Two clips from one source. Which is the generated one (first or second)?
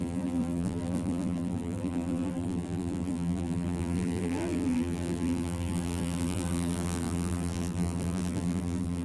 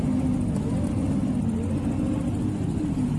first